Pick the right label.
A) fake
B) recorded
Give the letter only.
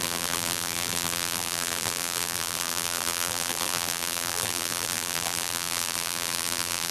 A